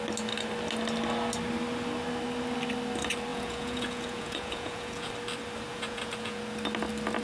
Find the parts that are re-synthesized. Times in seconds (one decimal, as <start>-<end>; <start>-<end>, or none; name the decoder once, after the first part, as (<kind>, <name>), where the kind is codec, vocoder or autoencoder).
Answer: 3.3-5.1 (vocoder, Vocos); 5.7-6.4